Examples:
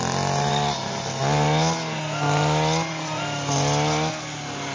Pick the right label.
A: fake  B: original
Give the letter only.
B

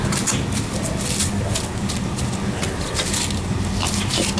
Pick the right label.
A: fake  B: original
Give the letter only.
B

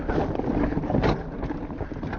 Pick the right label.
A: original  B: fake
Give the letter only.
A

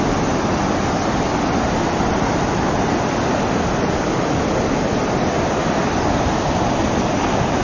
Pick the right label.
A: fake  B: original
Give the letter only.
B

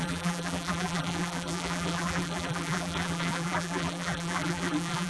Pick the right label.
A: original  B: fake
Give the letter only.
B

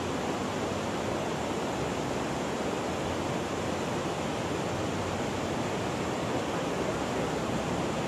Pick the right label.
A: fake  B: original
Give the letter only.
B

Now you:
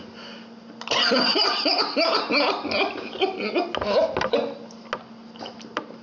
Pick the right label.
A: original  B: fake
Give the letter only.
A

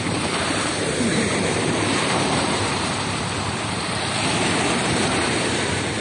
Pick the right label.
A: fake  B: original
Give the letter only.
A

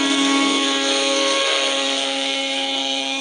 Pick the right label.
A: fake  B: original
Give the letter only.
A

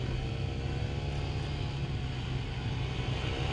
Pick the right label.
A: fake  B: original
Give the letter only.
B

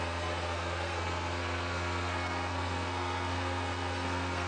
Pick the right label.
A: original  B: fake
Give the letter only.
B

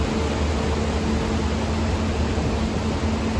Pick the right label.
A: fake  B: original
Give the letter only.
B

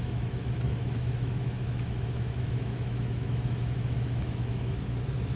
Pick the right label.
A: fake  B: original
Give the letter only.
A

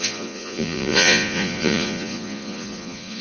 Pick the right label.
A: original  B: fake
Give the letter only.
B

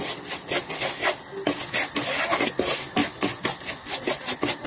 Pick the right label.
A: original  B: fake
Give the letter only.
A